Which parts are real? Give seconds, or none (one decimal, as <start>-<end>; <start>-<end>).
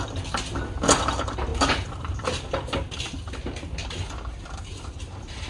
0.0-5.5